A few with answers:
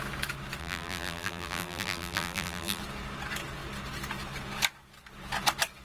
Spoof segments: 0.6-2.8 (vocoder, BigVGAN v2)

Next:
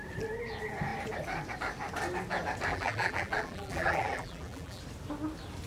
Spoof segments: 2.7-4.8 (vocoder, BigVGAN v2)

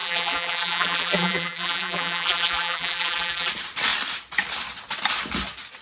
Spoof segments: 0.0-3.5 (vocoder, BigVGAN v2)

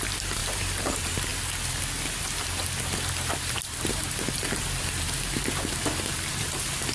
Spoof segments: 0.0-1.3 (vocoder, BigVGAN v2); 3.4-6.9

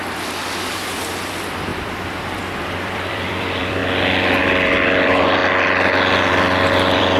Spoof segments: 0.0-3.8 (vocoder, BigVGAN v2); 4.4-5.4; 6.3-7.2

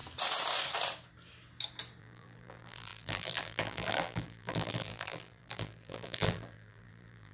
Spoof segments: 2.0-7.3 (vocoder, BigVGAN v2)